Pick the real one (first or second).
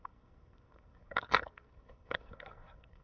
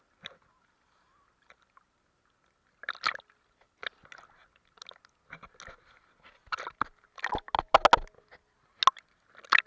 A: second